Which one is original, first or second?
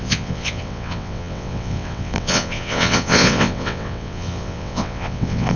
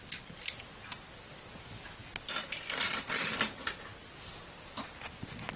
second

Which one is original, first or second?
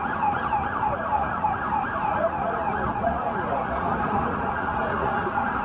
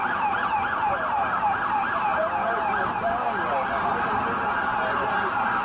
second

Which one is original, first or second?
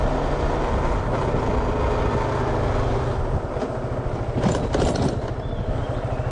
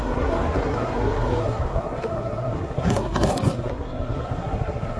first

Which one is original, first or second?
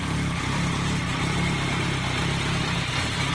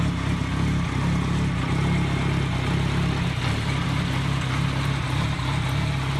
second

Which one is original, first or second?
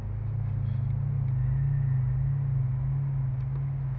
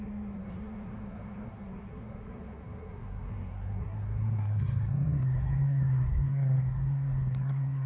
first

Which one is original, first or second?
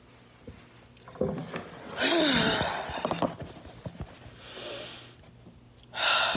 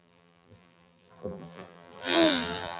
first